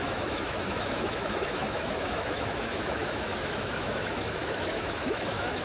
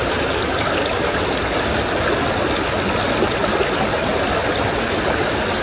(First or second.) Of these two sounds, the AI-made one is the first